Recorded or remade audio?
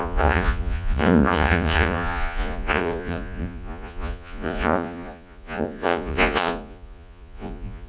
remade